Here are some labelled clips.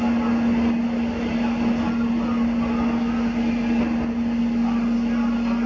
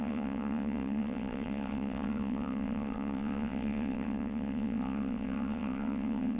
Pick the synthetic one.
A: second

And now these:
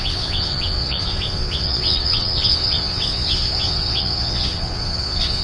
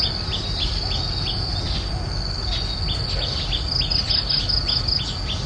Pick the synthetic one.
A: first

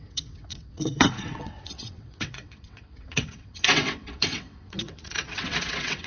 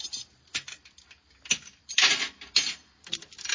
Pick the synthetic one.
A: first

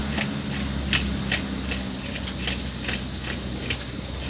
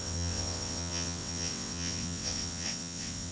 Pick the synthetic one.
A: second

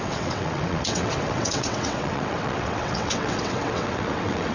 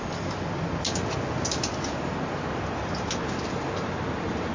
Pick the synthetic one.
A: first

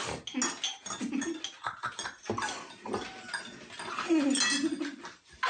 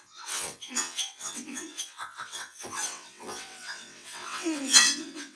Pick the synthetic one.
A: second